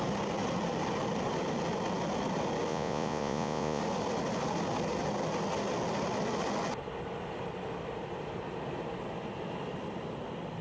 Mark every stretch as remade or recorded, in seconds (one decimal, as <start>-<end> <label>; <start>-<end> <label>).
0.0-2.7 recorded; 2.7-3.8 remade; 3.8-10.6 recorded